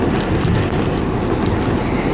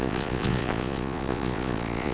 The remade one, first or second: second